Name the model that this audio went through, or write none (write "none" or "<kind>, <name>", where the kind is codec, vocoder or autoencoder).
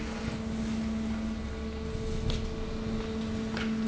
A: none